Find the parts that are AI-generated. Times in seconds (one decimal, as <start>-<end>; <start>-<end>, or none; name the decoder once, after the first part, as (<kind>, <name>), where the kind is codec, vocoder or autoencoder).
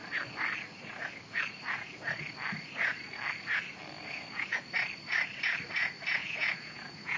4.0-4.6 (vocoder, Vocos); 6.2-7.2